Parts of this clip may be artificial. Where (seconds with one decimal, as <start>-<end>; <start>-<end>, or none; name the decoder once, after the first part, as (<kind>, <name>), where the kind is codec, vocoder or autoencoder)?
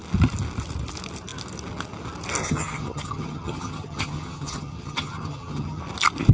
2.4-5.8 (vocoder, HiFi-GAN)